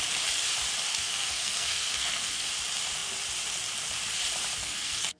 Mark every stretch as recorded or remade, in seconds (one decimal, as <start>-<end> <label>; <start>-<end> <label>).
0.0-0.9 recorded; 0.9-2.5 remade; 2.5-4.6 recorded; 4.6-5.2 remade